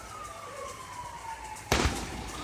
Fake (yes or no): no